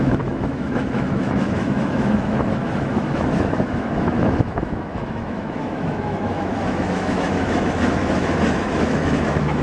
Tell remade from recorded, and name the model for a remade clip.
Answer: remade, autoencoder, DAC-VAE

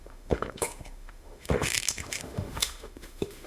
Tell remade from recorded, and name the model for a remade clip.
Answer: remade, autoencoder, DAC-VAE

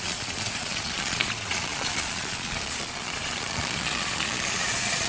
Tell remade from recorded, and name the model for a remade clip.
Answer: remade, vocoder, Vocos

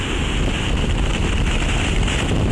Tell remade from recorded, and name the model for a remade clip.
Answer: remade, vocoder, BigVGAN v2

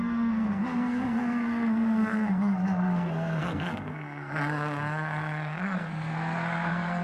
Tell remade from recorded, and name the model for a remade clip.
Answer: remade, codec, SNAC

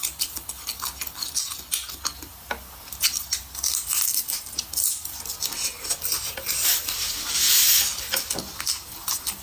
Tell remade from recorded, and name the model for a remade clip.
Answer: recorded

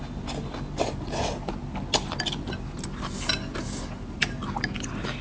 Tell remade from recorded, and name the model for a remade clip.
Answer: recorded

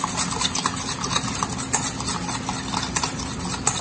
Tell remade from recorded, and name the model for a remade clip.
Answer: recorded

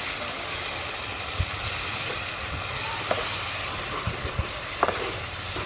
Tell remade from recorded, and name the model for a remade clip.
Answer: recorded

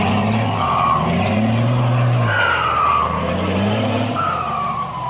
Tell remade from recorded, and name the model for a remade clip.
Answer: remade, vocoder, BigVGAN v2